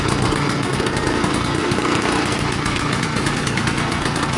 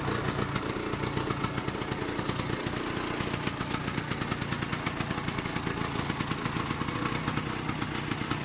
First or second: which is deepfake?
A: first